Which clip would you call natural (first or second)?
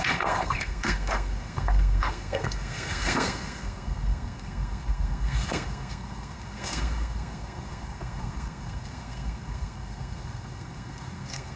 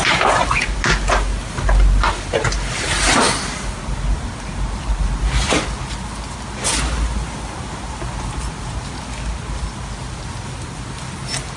second